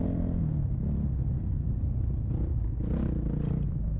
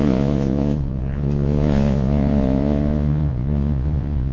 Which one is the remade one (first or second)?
second